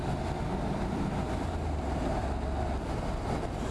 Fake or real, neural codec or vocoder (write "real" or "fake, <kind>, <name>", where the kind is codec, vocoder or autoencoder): real